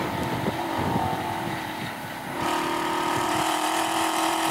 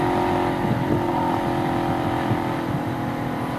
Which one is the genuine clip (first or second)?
second